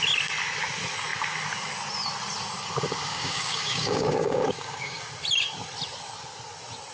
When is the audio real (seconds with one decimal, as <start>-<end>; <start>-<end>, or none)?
0.0-3.1; 5.0-6.9